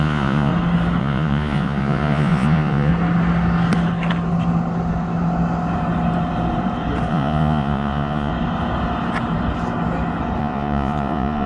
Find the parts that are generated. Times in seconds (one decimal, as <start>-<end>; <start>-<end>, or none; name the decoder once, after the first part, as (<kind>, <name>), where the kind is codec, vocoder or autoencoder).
0.0-0.5 (vocoder, Vocos); 1.0-2.9; 7.1-8.3; 10.4-11.5